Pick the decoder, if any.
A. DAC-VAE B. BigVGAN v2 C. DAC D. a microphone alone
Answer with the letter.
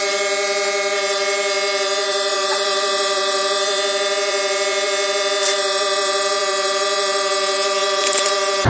B